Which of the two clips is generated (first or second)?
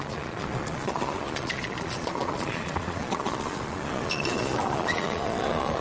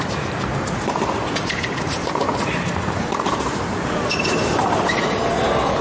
first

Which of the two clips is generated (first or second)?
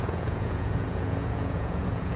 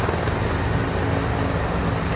first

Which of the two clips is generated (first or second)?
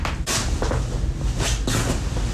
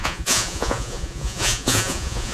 second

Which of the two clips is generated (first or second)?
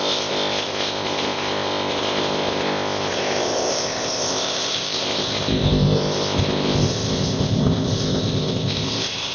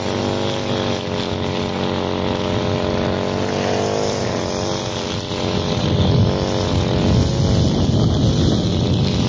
first